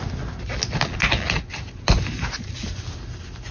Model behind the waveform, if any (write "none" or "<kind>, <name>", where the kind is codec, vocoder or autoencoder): none